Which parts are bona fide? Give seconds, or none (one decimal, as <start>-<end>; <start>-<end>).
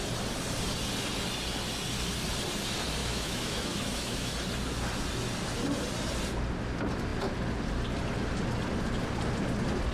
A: 0.0-3.0; 4.3-9.9